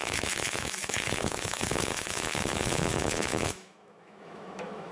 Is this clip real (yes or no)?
no